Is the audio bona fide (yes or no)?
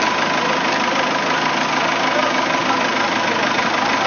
yes